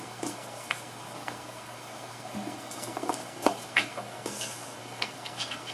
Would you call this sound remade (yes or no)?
yes